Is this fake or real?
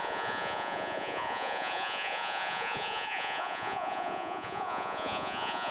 fake